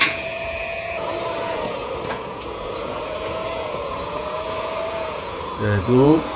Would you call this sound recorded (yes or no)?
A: no